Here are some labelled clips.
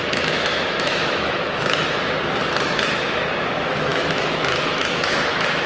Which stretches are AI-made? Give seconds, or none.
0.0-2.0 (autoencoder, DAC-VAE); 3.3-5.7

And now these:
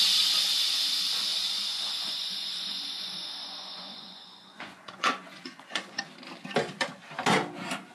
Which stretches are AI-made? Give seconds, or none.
1.3-6.0 (vocoder, Vocos)

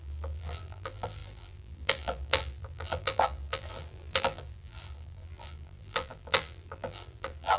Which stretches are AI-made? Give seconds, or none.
0.0-7.6 (vocoder, BigVGAN v2)

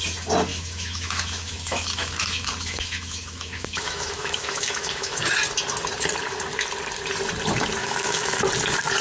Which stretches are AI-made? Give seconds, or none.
0.5-5.3 (autoencoder, DAC-VAE); 7.8-8.4

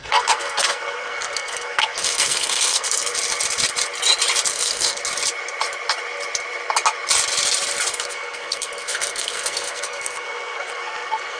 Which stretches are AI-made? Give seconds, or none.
0.0-3.1 (codec, SNAC); 4.5-5.0; 7.9-11.4

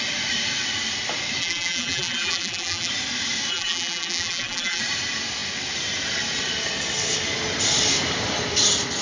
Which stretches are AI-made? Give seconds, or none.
1.4-2.9 (vocoder, BigVGAN v2); 3.5-4.8

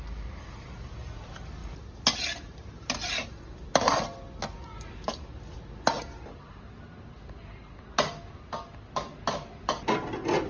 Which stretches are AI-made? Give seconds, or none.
none